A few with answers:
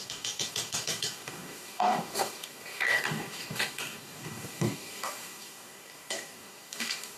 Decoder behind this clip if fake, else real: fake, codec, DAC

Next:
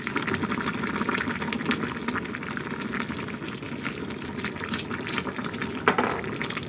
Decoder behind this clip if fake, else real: real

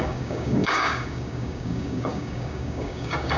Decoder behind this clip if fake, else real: fake, codec, DAC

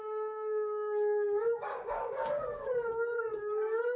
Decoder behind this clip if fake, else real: fake, codec, DAC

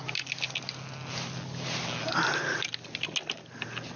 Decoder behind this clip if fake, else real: real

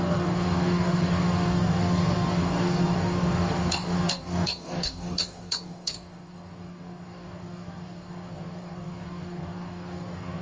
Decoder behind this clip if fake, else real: fake, codec, DAC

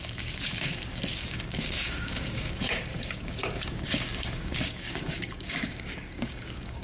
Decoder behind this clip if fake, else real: fake, codec, DAC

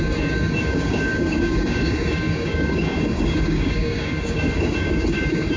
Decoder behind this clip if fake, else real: fake, codec, DAC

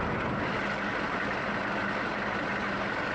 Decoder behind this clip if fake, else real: real